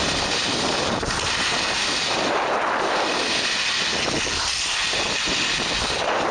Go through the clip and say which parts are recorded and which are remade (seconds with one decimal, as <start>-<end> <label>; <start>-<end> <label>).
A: 0.0-6.3 recorded